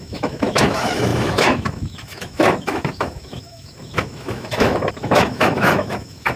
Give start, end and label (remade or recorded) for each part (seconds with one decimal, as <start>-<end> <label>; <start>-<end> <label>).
0.0-6.4 remade

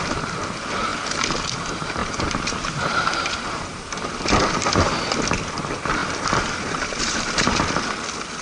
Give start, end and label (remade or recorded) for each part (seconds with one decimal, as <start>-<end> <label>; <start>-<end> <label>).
0.0-2.0 recorded; 2.0-4.9 remade; 4.9-6.0 recorded; 6.0-7.6 remade; 7.6-8.4 recorded

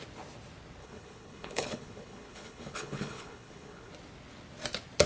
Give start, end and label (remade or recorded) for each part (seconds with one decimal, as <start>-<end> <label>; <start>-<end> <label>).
0.0-0.8 recorded; 0.8-3.9 remade; 3.9-5.1 recorded

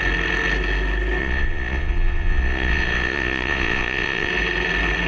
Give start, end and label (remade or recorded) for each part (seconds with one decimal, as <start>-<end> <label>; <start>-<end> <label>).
0.0-1.2 recorded; 1.2-4.3 remade; 4.3-5.1 recorded

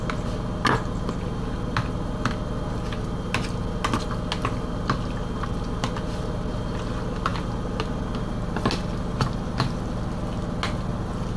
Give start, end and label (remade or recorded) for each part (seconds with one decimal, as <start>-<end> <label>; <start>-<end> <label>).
0.0-11.4 recorded

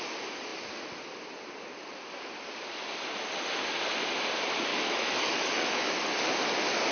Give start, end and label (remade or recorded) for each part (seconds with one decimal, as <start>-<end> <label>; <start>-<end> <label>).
0.0-4.7 recorded; 4.7-6.2 remade; 6.2-6.9 recorded

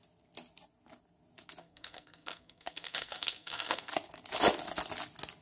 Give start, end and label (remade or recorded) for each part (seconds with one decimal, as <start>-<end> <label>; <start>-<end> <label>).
0.0-1.6 recorded; 1.6-3.9 remade; 3.9-5.4 recorded